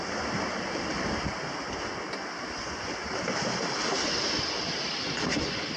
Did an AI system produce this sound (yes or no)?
no